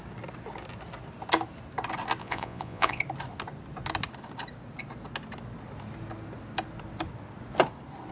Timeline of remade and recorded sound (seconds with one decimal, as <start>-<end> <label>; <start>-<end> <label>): 0.0-2.2 recorded; 2.2-3.0 remade; 3.0-8.1 recorded